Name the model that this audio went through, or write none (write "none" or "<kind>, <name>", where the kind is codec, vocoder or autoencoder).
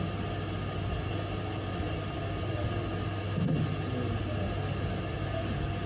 none